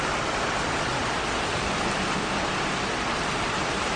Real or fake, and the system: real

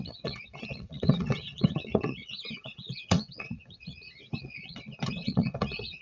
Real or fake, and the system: fake, vocoder, WaveNeXt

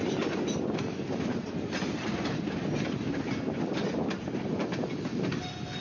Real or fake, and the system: real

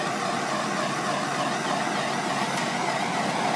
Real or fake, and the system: real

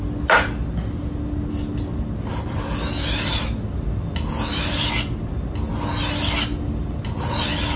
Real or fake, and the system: real